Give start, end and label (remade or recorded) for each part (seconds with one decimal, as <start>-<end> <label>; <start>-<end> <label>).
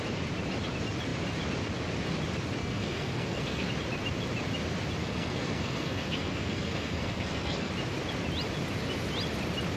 0.0-2.6 recorded; 2.6-3.7 remade; 3.7-5.0 recorded; 5.0-7.7 remade; 7.7-9.8 recorded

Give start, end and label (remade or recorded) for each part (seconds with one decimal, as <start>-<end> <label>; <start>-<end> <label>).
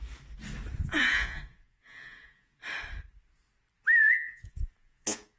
0.0-0.9 recorded; 0.9-2.6 remade; 2.6-4.0 recorded; 4.0-5.4 remade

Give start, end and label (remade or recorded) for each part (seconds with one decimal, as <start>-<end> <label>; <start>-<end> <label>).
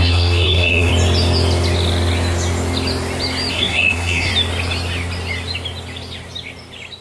0.0-0.9 remade; 0.9-3.5 recorded; 3.5-4.3 remade; 4.3-7.0 recorded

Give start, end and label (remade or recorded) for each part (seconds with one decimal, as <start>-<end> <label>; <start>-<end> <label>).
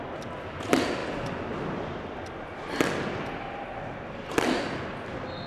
0.0-5.5 recorded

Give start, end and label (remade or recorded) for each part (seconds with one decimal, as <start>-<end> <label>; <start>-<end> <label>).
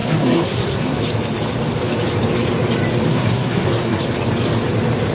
0.0-1.0 remade; 1.0-3.1 recorded; 3.1-4.0 remade; 4.0-5.1 recorded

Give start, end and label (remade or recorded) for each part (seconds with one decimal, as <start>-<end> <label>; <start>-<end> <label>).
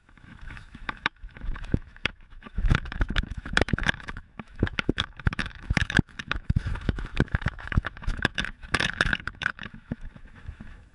0.0-10.9 remade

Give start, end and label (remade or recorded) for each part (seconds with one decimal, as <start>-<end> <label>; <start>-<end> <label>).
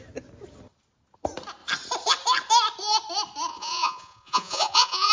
0.0-3.5 recorded; 3.5-5.1 remade